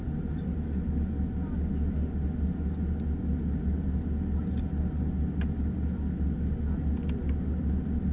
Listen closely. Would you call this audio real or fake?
real